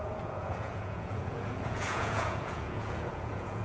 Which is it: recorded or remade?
remade